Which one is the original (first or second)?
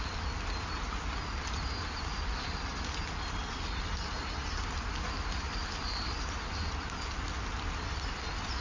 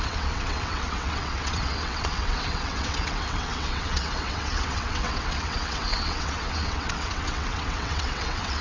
first